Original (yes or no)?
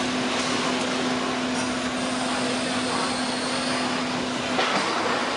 yes